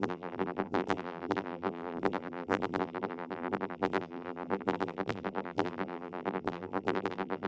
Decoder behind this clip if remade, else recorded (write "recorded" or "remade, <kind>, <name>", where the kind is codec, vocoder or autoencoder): remade, vocoder, BigVGAN v2